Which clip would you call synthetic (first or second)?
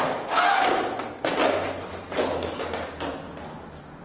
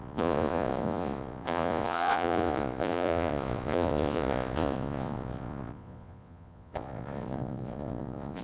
second